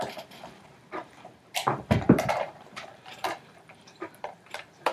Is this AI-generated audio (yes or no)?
yes